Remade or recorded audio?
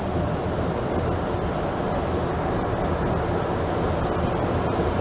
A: recorded